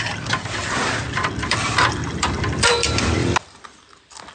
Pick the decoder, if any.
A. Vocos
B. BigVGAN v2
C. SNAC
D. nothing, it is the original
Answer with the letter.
B